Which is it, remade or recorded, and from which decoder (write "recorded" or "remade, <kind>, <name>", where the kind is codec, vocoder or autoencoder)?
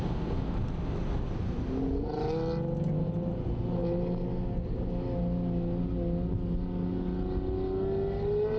recorded